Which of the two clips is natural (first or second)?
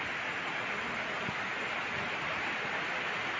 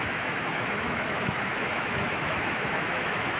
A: first